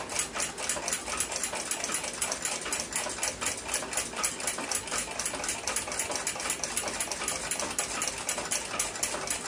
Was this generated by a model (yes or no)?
no